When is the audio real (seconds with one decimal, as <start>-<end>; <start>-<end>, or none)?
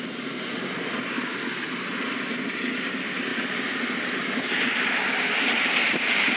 0.0-6.4